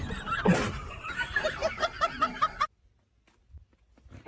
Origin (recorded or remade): recorded